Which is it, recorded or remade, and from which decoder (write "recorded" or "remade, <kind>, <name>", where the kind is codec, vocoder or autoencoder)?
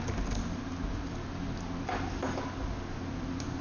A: recorded